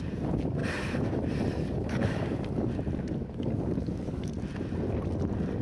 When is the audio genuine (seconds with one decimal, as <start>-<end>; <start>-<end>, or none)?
0.0-0.6; 1.2-1.6; 2.7-3.2; 4.3-5.6